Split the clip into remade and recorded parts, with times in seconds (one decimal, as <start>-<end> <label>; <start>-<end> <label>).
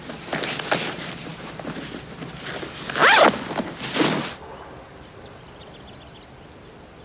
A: 0.0-7.0 recorded